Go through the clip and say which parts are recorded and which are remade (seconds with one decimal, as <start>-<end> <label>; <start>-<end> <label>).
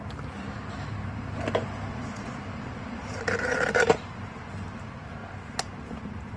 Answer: 0.0-5.2 remade; 5.2-5.8 recorded; 5.8-6.4 remade